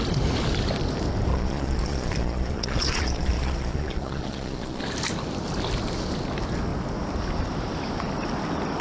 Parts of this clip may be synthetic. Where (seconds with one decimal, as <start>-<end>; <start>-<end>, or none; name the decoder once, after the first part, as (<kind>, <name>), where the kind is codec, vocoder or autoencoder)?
1.3-4.8 (vocoder, Vocos)